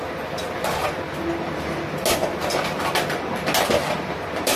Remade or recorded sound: recorded